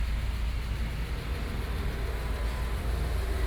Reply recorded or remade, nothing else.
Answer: recorded